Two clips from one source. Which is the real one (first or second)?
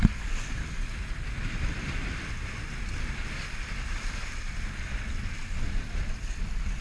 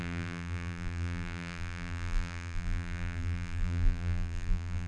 first